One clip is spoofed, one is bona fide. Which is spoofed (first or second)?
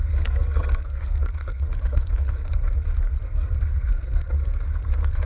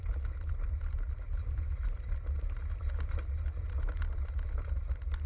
first